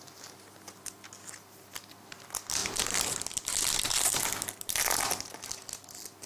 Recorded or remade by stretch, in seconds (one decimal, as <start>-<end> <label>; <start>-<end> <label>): 0.0-6.3 recorded